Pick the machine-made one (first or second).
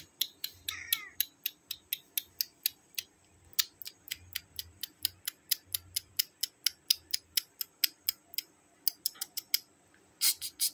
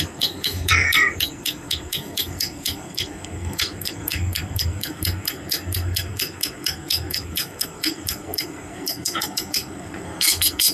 second